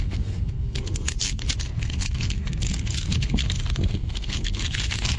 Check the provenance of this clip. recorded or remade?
remade